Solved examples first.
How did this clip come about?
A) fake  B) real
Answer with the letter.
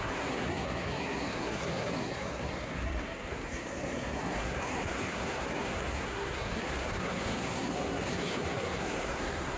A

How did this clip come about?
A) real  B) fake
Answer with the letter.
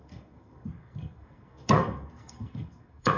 B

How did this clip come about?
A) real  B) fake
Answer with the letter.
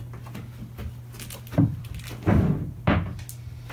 A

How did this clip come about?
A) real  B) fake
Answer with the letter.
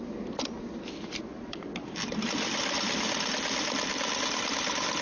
A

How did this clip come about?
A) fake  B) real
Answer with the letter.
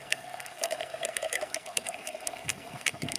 A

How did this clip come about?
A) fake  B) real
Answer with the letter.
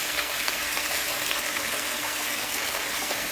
A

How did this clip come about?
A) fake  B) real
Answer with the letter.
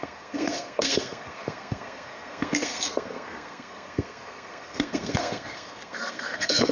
A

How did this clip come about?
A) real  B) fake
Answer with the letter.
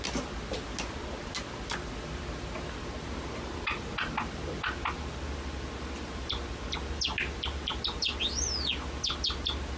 A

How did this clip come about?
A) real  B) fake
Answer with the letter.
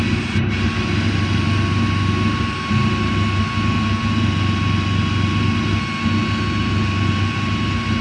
A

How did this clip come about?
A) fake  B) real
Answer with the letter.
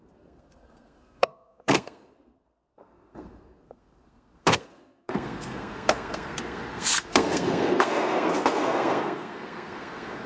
A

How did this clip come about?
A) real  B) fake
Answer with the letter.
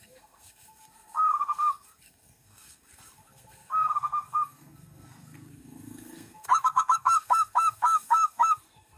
B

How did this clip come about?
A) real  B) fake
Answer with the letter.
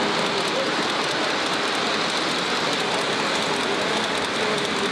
A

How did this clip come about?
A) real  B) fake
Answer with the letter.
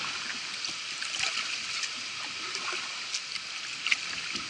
A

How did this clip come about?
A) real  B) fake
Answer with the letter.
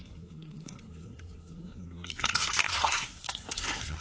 B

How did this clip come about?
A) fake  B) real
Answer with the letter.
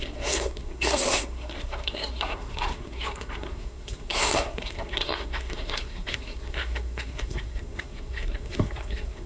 A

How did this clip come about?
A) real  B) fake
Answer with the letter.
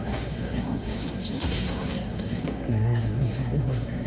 B